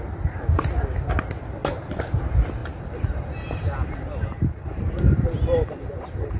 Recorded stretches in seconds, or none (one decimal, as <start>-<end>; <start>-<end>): 0.0-2.6